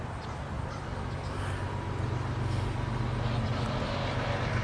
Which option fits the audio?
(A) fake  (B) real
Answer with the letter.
B